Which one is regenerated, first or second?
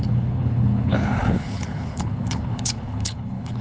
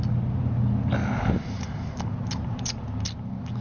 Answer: first